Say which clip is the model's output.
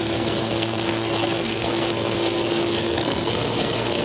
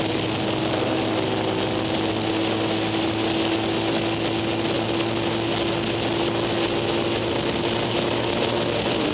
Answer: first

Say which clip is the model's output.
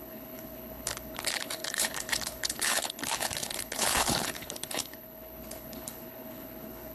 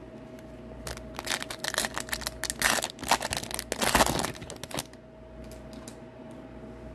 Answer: first